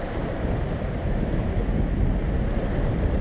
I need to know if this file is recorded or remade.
recorded